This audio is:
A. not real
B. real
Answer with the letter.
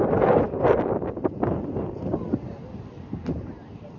B